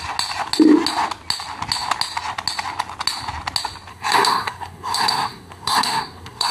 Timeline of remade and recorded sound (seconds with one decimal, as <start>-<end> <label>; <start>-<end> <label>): 0.0-3.9 recorded; 3.9-6.5 remade